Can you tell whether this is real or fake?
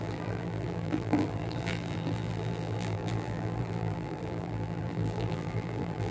fake